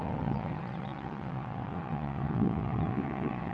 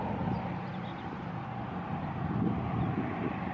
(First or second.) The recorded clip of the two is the second